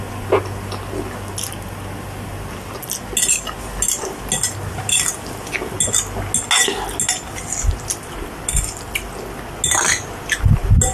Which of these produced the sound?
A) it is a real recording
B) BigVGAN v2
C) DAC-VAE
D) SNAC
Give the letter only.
A